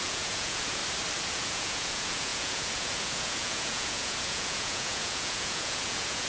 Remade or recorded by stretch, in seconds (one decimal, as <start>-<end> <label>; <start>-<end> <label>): 0.0-0.8 remade; 0.8-1.3 recorded; 1.3-6.3 remade